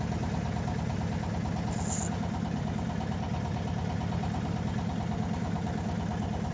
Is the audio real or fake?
real